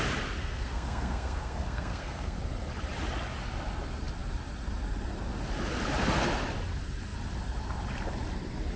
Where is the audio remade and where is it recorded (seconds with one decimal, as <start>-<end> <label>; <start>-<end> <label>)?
0.0-0.4 recorded; 0.4-2.4 remade; 2.4-8.8 recorded